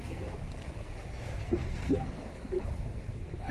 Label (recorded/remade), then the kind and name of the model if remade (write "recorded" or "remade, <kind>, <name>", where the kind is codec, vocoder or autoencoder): remade, codec, SNAC